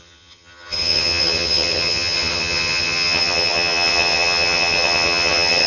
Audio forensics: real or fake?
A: fake